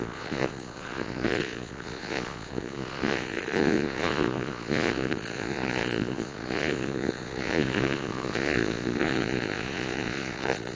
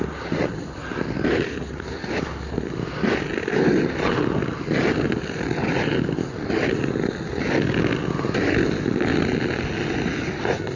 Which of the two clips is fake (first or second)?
first